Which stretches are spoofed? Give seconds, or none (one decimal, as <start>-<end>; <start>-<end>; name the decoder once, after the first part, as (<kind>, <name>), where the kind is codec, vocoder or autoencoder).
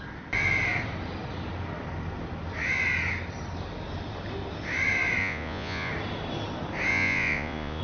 5.2-5.9 (vocoder, Vocos); 6.9-7.8